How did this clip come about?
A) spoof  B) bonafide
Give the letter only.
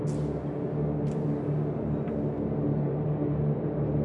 B